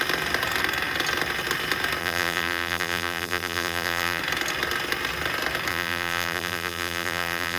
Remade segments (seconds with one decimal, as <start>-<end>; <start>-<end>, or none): 2.0-4.2; 5.7-7.6